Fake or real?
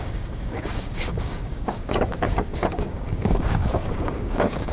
fake